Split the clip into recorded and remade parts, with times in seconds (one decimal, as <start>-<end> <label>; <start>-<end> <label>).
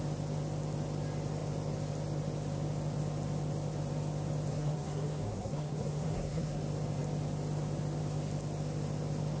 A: 0.0-4.5 recorded; 4.5-6.6 remade; 6.6-9.4 recorded